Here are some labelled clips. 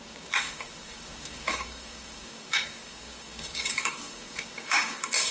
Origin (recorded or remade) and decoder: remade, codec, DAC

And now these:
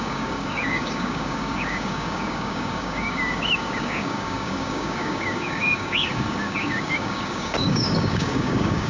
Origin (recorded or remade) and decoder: remade, codec, DAC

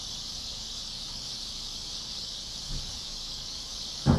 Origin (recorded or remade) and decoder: remade, codec, DAC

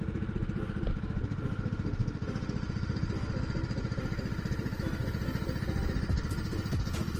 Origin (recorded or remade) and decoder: recorded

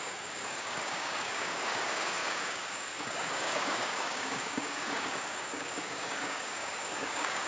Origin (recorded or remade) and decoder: remade, codec, DAC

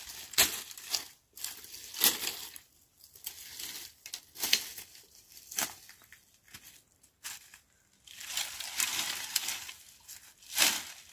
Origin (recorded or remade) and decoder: recorded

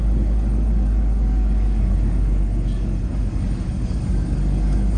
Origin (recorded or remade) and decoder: remade, codec, DAC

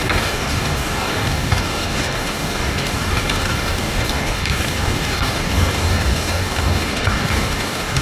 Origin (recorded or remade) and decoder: remade, codec, DAC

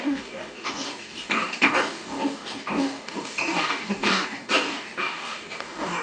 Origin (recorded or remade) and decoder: remade, codec, DAC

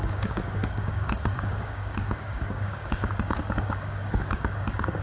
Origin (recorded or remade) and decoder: remade, codec, DAC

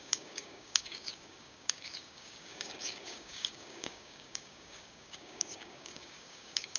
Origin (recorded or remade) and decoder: remade, codec, DAC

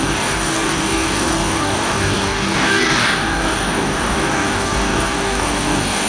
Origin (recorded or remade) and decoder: remade, codec, DAC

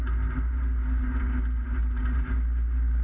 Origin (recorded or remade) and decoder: recorded